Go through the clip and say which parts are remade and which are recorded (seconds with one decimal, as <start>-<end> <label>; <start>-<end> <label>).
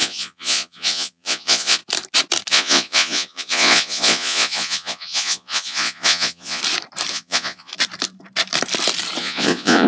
0.0-1.8 remade; 1.8-2.5 recorded; 2.5-6.6 remade; 6.6-7.1 recorded; 7.1-7.7 remade; 7.7-9.2 recorded; 9.2-9.9 remade